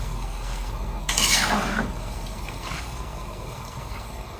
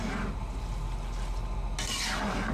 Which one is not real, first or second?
first